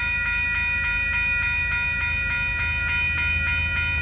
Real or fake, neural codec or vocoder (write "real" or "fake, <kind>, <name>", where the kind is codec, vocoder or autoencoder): real